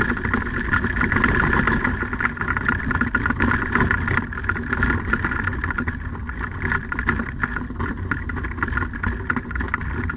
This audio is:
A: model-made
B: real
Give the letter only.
B